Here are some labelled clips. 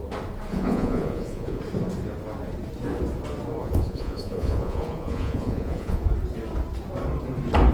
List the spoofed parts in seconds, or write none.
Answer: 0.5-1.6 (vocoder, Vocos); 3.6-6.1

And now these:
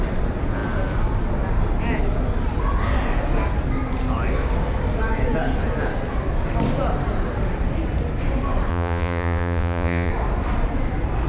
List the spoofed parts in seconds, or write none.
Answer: 8.7-10.1 (vocoder, Vocos)

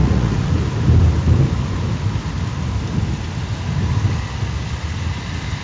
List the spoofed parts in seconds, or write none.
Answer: 0.0-0.5 (vocoder, Vocos)

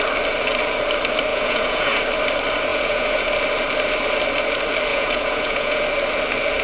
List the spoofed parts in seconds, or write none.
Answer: 1.3-2.0 (vocoder, Vocos); 2.7-3.3; 4.9-5.8

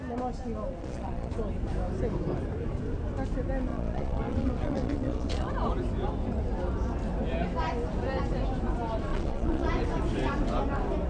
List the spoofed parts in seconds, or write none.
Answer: 0.8-1.3 (vocoder, Vocos); 3.7-5.5; 9.1-9.7

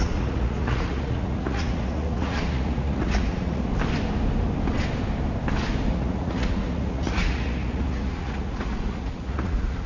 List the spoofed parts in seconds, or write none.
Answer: 0.0-3.7 (vocoder, Vocos); 5.9-9.9